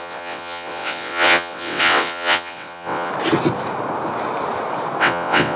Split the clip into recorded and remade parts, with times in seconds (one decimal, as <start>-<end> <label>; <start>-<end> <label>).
0.0-3.1 remade; 3.1-5.0 recorded; 5.0-5.6 remade